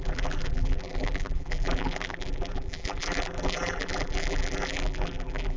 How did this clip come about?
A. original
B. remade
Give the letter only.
B